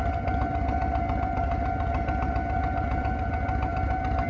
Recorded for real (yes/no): yes